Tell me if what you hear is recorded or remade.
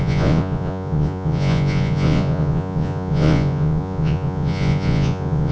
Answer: remade